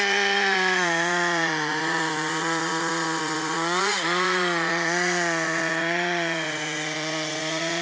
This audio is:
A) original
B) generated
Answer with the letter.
B